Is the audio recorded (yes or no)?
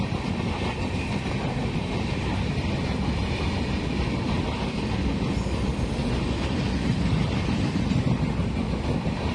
yes